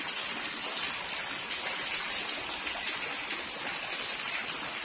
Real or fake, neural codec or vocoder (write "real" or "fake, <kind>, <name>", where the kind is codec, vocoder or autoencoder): real